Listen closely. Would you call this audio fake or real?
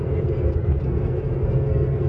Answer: fake